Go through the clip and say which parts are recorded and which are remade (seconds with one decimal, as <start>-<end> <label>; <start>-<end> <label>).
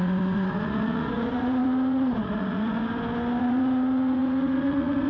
0.0-2.8 remade; 2.8-3.4 recorded; 3.4-5.1 remade